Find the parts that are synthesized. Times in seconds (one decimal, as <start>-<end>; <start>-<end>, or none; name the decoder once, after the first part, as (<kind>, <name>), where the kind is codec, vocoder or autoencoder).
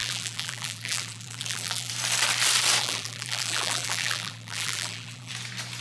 0.0-1.9 (vocoder, BigVGAN v2); 2.8-5.3